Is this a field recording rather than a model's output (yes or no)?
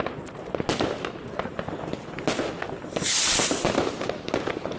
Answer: yes